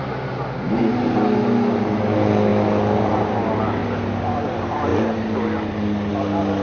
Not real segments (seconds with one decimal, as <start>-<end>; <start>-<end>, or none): none